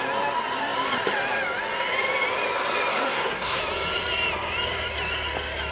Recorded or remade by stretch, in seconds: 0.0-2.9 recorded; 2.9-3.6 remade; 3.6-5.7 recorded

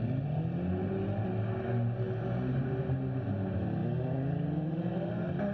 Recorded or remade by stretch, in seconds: 0.0-5.5 recorded

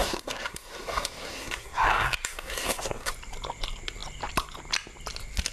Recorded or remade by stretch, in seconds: 0.0-3.1 remade; 3.1-5.5 recorded

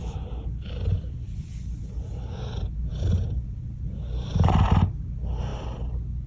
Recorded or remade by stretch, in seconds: 0.0-6.3 recorded

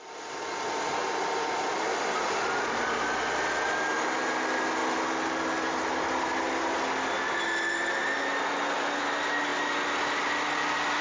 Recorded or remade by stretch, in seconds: 0.0-11.0 recorded

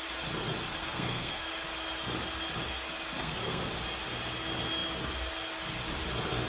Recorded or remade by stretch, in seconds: 0.0-0.8 recorded; 0.8-1.5 remade; 1.5-3.2 recorded; 3.2-3.7 remade; 3.7-6.5 recorded